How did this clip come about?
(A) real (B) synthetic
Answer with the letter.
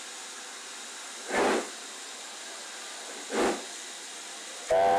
A